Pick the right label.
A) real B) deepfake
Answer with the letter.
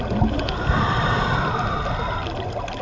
A